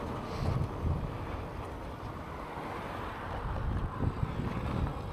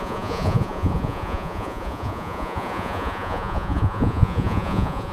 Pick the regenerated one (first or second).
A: second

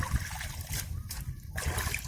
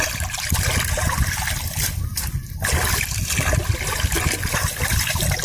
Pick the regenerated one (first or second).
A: second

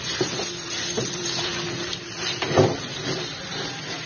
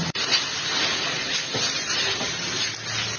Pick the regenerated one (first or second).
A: first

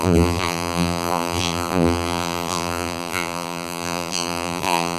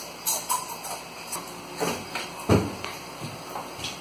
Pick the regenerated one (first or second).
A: first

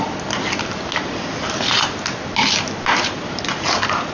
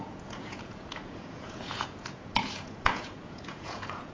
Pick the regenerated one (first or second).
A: second